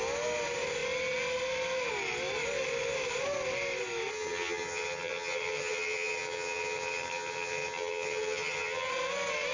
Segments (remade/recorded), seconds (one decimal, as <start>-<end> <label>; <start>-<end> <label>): 0.0-4.1 recorded; 4.1-8.9 remade; 8.9-9.5 recorded